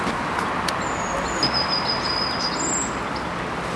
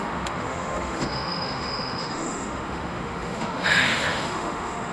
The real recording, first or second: first